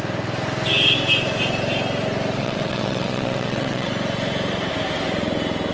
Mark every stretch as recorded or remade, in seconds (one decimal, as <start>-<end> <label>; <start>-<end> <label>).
0.0-2.4 recorded; 2.4-3.9 remade; 3.9-5.7 recorded